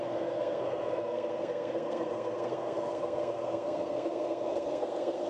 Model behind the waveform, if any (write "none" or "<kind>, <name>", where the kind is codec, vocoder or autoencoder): codec, SNAC